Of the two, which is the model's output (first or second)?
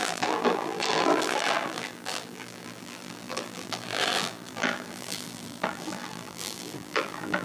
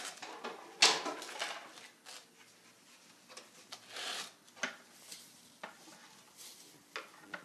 first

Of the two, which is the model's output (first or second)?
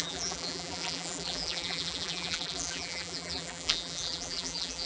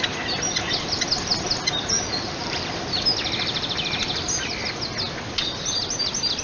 first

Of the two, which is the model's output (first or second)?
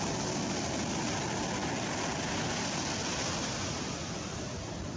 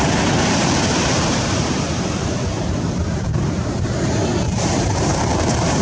second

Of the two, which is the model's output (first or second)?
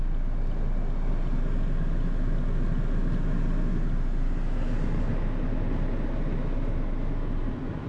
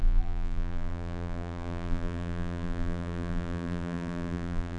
second